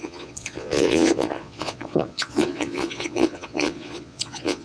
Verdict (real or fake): fake